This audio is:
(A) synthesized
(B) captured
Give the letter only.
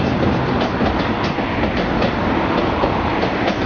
B